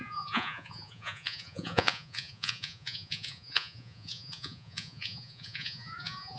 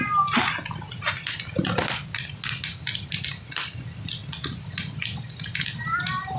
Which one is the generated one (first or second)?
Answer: first